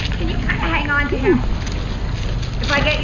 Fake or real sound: real